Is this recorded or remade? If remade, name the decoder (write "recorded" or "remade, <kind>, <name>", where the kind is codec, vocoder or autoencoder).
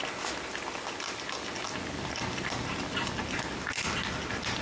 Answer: recorded